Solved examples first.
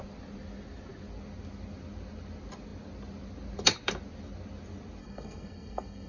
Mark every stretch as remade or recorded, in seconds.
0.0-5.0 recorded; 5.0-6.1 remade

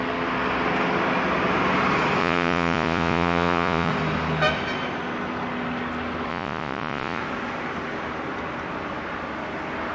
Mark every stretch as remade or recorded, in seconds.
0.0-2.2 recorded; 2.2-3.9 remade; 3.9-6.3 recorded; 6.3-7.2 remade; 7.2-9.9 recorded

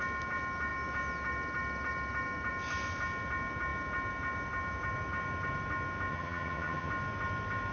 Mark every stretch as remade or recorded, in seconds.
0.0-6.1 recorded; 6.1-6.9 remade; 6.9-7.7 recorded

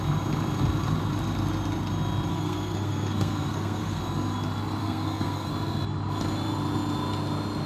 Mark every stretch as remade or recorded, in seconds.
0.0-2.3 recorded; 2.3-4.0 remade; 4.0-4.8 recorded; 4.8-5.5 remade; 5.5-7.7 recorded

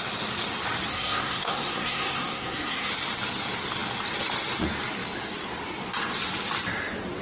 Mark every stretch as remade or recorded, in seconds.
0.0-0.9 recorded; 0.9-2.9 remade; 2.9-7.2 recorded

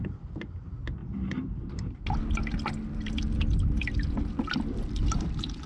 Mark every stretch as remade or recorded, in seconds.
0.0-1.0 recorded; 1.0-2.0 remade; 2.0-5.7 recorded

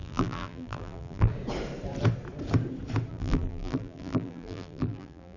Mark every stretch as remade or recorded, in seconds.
0.0-1.3 remade; 1.3-3.1 recorded; 3.1-5.4 remade

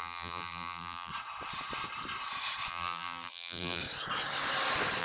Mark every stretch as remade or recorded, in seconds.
0.0-1.1 remade; 1.1-2.7 recorded; 2.7-3.8 remade; 3.8-5.0 recorded